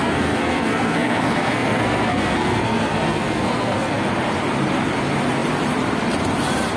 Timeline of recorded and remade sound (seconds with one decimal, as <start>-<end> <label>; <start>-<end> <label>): 0.0-4.1 remade; 4.1-6.8 recorded